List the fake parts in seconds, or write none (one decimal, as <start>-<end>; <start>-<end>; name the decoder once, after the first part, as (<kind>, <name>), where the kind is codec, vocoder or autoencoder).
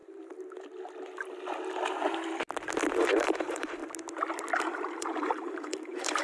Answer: 3.0-3.8 (vocoder, BigVGAN v2); 4.6-6.2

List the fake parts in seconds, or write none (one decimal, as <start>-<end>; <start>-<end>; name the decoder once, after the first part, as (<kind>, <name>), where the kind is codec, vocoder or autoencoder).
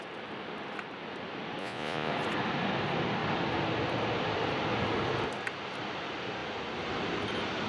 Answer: 1.6-2.1 (vocoder, Vocos)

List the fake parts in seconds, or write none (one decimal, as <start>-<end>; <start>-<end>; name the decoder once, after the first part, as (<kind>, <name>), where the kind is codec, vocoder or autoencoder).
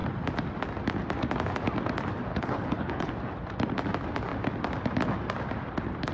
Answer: 2.3-3.1 (codec, HILCodec)